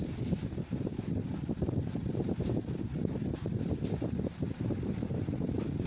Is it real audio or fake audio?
real